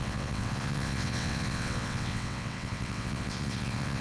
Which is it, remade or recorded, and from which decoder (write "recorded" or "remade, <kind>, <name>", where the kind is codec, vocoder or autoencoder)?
remade, vocoder, WaveNeXt